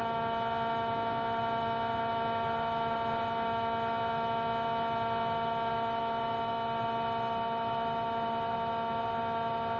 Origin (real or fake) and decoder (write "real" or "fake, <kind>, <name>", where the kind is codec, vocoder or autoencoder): real